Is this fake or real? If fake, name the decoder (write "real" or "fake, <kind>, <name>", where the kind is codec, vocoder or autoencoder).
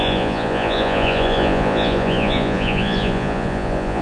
fake, vocoder, Vocos